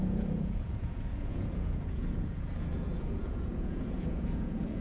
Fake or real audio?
fake